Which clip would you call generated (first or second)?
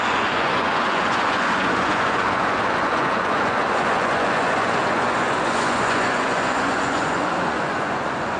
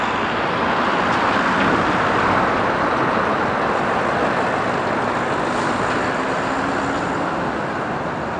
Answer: first